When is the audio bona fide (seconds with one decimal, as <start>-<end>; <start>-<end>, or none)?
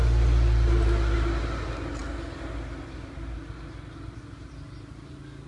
0.0-5.5